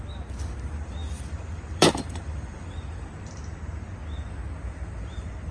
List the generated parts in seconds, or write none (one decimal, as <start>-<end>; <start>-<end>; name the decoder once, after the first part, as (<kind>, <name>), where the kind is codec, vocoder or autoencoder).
1.0-3.3 (vocoder, BigVGAN v2)